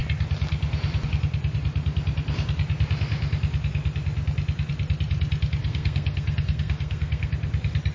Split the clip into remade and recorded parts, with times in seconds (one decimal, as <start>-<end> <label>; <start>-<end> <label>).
0.0-5.6 recorded; 5.6-7.3 remade; 7.3-7.9 recorded